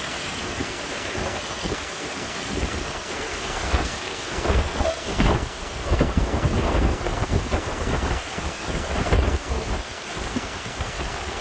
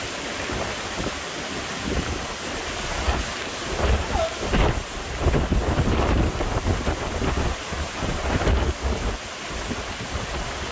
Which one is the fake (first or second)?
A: first